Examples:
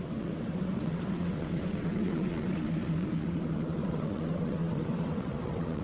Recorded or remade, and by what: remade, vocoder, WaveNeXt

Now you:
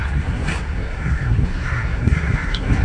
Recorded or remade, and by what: remade, codec, SNAC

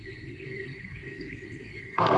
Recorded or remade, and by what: remade, codec, SNAC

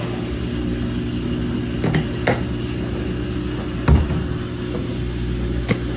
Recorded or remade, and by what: recorded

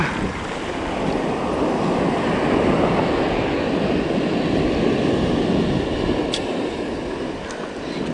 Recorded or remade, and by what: recorded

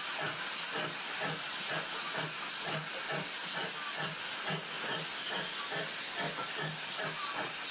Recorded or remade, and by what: recorded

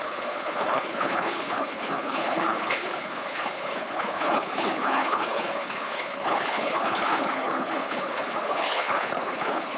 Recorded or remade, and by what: remade, codec, HILCodec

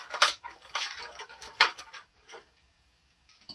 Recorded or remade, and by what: remade, codec, DAC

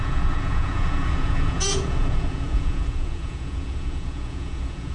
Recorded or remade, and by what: remade, vocoder, Vocos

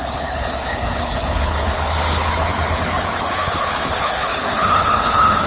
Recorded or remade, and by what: remade, codec, HILCodec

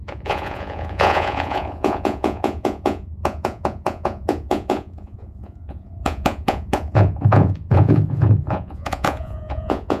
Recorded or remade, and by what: remade, vocoder, Vocos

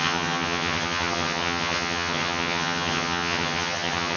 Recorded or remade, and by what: remade, vocoder, HiFi-GAN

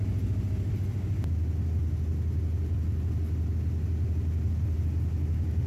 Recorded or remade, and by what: recorded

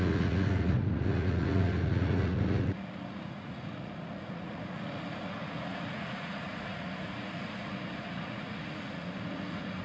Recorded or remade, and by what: remade, vocoder, Vocos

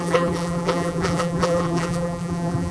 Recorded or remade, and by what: remade, vocoder, BigVGAN v2